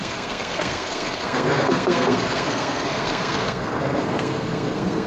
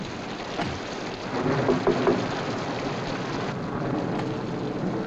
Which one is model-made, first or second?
first